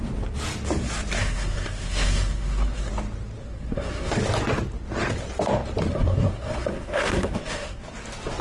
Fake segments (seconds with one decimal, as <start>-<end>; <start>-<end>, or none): 1.2-2.9; 3.4-4.1; 5.9-7.8